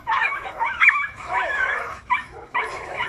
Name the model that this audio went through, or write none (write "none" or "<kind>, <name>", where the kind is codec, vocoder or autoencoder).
autoencoder, DAC-VAE